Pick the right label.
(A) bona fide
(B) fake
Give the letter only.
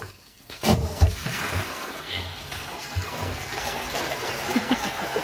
B